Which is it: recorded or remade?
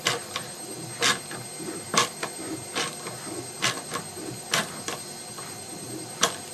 recorded